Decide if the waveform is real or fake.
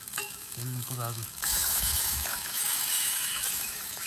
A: fake